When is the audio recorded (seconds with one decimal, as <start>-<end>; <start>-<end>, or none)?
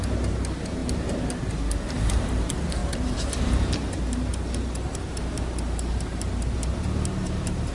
0.8-1.8